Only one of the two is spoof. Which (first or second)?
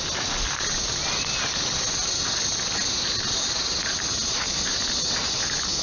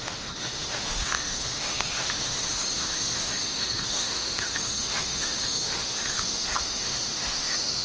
second